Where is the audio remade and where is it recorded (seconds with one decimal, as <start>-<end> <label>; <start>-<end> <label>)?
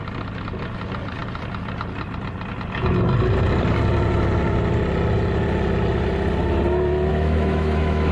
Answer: 0.0-7.1 recorded; 7.1-8.1 remade